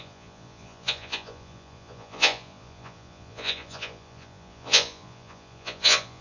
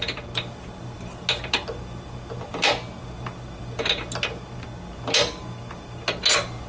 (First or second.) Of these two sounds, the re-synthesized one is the first